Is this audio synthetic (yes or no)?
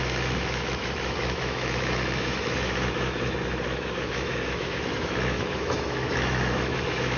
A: yes